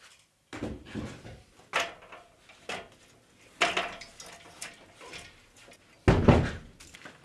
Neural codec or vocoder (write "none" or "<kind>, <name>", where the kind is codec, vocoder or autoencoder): none